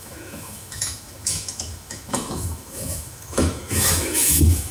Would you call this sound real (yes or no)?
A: no